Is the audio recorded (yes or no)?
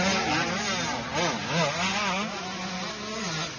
yes